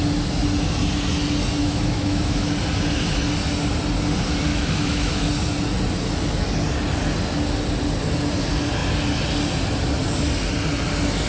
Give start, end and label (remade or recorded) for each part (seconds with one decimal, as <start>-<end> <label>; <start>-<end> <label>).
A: 0.0-1.6 recorded; 1.6-2.5 remade; 2.5-4.5 recorded; 4.5-5.3 remade; 5.3-11.3 recorded